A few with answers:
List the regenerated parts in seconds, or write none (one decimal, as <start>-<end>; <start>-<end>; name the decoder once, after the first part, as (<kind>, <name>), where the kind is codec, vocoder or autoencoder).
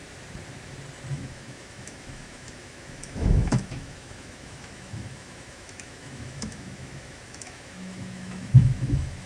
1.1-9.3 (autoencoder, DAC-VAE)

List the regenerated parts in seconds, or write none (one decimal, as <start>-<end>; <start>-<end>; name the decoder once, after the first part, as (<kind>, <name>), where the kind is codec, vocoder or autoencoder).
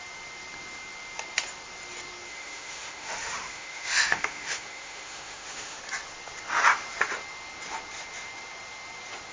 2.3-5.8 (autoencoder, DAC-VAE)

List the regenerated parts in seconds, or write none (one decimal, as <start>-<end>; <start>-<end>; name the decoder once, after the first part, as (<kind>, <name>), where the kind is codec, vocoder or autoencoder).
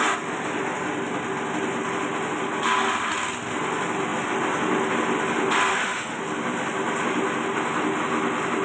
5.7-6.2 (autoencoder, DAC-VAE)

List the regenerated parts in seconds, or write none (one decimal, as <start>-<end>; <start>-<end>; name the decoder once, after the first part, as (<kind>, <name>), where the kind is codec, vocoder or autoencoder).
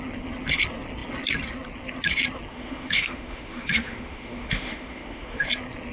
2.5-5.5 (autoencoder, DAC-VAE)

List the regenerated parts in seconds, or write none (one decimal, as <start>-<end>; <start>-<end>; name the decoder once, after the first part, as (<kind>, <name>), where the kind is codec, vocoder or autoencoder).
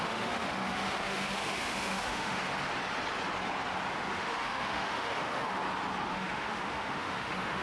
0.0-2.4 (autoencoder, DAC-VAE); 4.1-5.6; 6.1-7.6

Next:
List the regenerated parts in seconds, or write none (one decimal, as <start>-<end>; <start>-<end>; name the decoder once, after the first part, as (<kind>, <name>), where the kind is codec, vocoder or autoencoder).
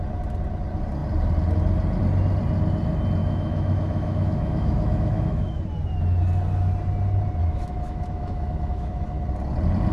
3.2-5.6 (autoencoder, DAC-VAE); 7.4-9.2